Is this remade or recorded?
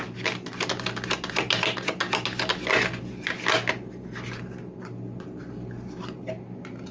recorded